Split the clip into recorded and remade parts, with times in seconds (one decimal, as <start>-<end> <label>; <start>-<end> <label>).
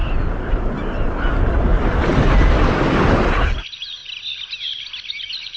0.0-5.6 recorded